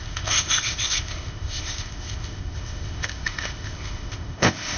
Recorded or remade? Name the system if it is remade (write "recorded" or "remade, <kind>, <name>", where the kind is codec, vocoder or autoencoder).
remade, codec, ZipCodec